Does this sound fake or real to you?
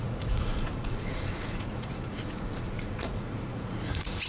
fake